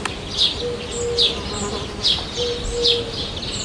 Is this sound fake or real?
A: real